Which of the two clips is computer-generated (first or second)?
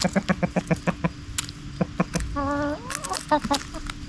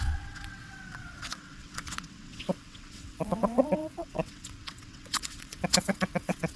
second